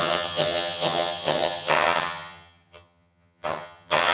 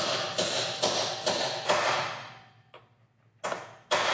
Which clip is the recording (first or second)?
second